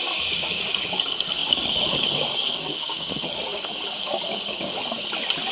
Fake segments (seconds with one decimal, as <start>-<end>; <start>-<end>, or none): 0.0-4.8